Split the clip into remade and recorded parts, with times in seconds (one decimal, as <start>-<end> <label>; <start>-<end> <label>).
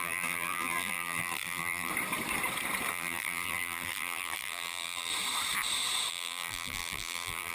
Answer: 0.0-1.9 remade; 1.9-2.9 recorded; 2.9-5.1 remade; 5.1-6.1 recorded; 6.1-7.5 remade